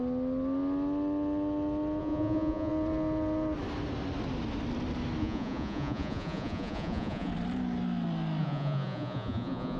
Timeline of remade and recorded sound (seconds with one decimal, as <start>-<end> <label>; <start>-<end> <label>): 0.0-2.0 recorded; 2.0-2.7 remade; 2.7-5.2 recorded; 5.2-7.3 remade; 7.3-8.4 recorded; 8.4-9.8 remade